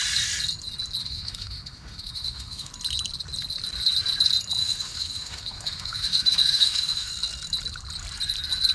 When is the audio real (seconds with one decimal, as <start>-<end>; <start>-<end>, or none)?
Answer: 0.0-1.0; 2.7-4.6; 7.1-8.7